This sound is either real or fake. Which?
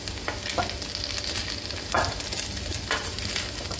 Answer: real